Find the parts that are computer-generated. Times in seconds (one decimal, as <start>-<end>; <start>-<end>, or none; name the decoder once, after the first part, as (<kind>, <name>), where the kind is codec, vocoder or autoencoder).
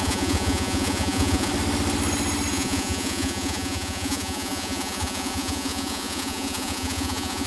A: 0.0-1.5 (vocoder, Vocos); 2.5-7.5